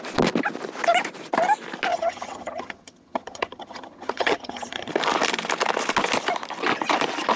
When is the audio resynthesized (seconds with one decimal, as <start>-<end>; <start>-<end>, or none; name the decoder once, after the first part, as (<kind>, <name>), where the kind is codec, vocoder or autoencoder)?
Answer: 1.9-4.9 (vocoder, HiFi-GAN)

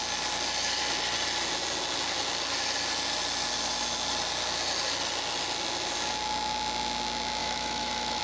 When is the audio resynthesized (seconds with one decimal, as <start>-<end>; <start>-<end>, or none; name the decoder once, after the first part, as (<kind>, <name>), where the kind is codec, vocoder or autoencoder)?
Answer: 7.4-8.2 (autoencoder, DAC-VAE)

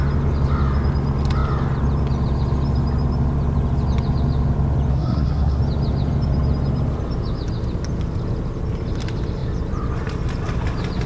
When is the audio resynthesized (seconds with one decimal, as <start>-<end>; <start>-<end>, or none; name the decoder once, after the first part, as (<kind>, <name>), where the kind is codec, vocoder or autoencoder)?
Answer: 4.9-5.6 (codec, SNAC)

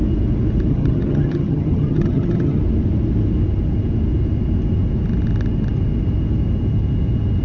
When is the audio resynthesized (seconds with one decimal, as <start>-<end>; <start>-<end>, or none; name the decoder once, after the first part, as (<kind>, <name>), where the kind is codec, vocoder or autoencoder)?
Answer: 0.7-2.6 (vocoder, HiFi-GAN)

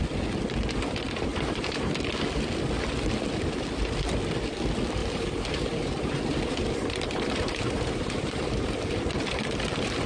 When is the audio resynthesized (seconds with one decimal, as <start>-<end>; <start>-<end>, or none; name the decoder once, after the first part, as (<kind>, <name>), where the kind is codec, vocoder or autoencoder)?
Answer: 1.3-2.0 (vocoder, BigVGAN v2); 5.0-8.9

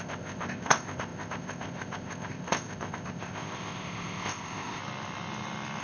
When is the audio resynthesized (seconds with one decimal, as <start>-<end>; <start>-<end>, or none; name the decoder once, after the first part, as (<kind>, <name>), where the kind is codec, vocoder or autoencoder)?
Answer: 0.0-4.8 (codec, ZipCodec)